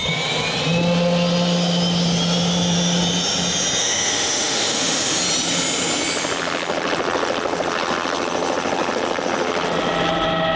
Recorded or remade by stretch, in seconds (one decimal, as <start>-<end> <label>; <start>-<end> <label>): 0.0-3.8 recorded; 3.8-5.2 remade; 5.2-10.6 recorded